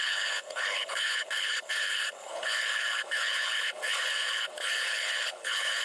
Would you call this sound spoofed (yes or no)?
yes